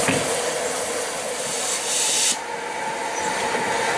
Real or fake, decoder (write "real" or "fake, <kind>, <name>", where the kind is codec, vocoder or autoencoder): real